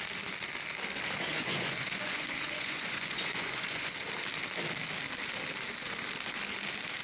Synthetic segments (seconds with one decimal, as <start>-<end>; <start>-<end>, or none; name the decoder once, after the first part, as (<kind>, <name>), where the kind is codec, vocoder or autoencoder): 1.3-3.9 (vocoder, Vocos)